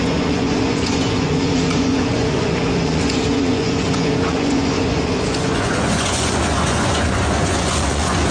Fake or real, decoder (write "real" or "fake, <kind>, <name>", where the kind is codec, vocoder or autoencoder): fake, vocoder, Vocos